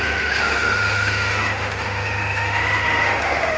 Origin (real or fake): fake